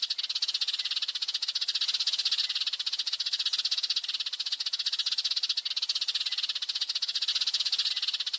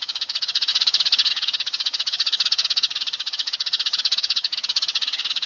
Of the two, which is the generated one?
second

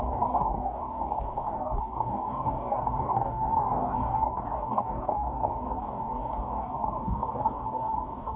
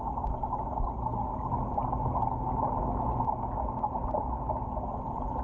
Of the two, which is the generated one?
first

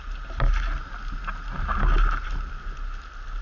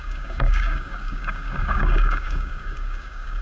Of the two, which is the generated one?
second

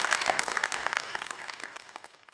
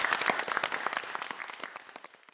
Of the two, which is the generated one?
first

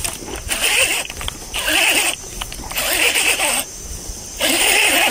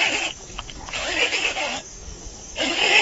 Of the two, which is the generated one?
second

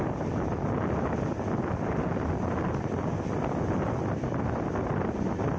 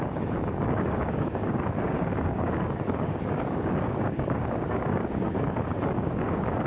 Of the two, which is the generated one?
second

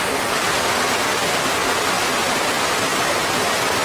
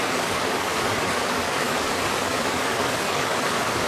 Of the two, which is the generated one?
second